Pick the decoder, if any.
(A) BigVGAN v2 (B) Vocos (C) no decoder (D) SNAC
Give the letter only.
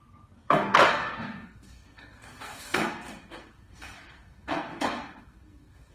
D